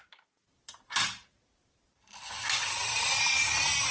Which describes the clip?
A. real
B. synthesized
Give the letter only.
B